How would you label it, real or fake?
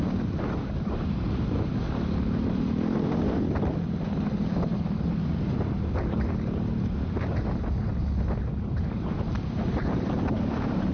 real